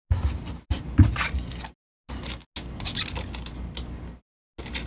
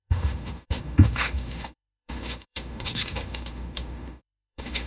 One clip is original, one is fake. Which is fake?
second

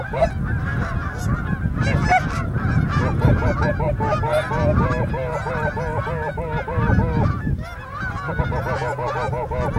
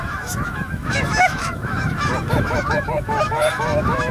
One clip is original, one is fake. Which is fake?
second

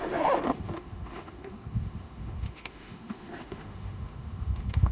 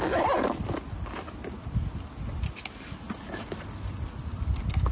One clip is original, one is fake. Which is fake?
first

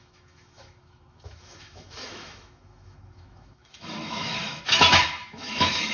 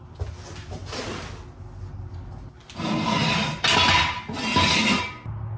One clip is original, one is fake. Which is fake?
first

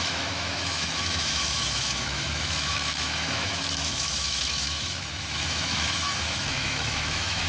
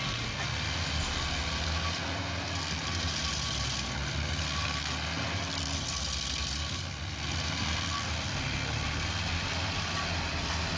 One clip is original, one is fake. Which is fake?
first